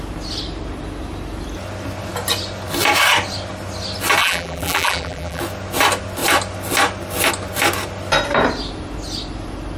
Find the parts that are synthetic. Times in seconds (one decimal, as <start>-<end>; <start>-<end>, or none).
4.2-5.4